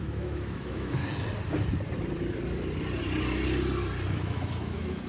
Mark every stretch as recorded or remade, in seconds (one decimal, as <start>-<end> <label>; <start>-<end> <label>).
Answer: 0.0-1.0 remade; 1.0-4.1 recorded; 4.1-5.1 remade